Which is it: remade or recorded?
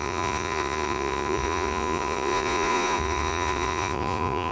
remade